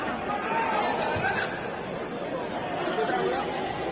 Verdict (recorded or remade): recorded